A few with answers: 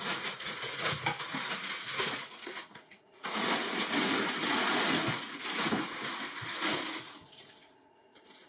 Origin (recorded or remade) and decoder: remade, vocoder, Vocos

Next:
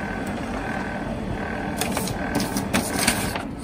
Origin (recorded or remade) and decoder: recorded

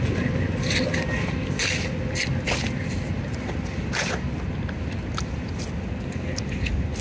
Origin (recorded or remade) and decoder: recorded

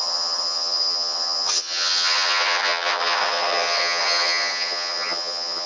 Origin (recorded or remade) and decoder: remade, vocoder, HiFi-GAN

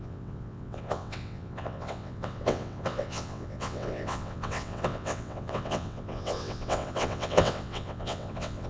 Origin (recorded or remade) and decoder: remade, vocoder, WaveNeXt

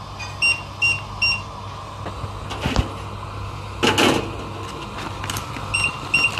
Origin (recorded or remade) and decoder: recorded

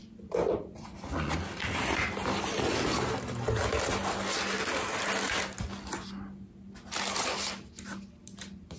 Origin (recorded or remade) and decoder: recorded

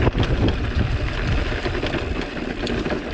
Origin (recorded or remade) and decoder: recorded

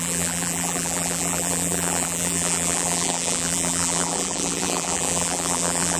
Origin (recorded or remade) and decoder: remade, vocoder, BigVGAN v2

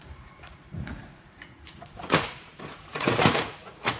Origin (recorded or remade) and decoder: remade, vocoder, Vocos